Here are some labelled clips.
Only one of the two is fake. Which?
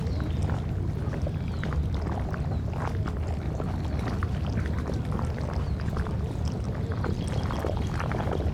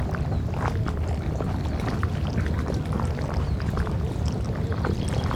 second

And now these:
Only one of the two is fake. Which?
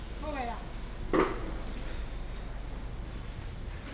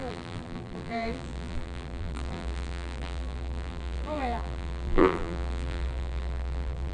second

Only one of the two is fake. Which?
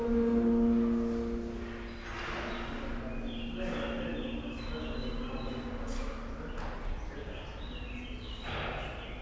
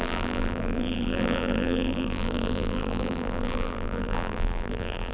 second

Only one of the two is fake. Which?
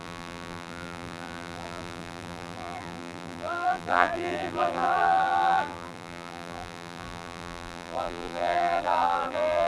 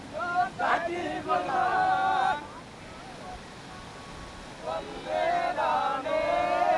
first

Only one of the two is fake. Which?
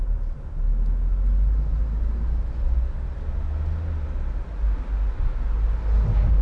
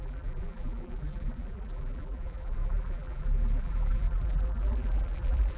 second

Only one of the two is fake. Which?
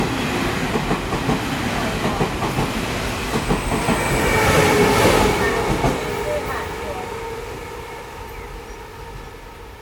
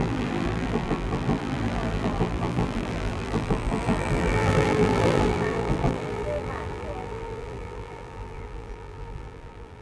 second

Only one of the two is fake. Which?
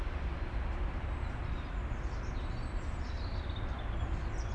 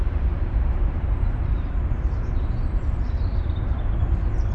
second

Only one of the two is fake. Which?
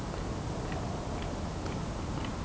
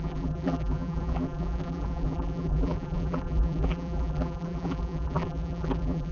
second